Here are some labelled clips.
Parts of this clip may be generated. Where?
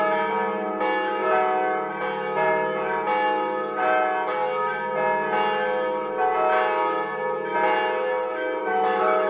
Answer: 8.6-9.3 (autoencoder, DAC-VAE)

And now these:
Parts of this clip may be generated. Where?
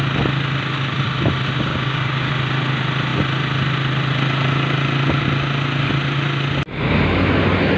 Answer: 1.7-2.3 (codec, DAC)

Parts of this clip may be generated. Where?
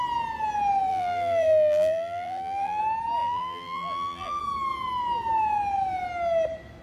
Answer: 0.9-2.8 (vocoder, BigVGAN v2); 3.2-4.4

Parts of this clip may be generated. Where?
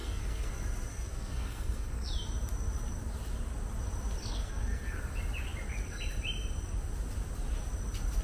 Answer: 0.0-0.5 (codec, SNAC); 0.9-2.1; 4.2-5.0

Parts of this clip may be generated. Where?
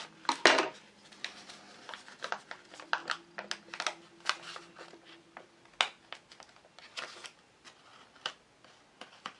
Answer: 7.9-8.4 (vocoder, BigVGAN v2)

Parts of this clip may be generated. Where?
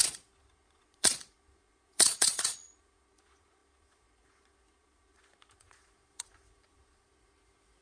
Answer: 0.0-7.8 (vocoder, Vocos)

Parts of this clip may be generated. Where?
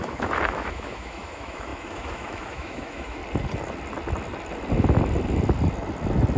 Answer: 0.0-3.2 (autoencoder, DAC-VAE)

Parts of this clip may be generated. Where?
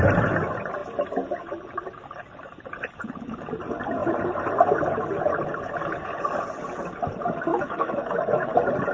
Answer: 7.5-8.5 (autoencoder, DAC-VAE)